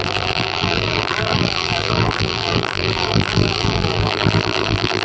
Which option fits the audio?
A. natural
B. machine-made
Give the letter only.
B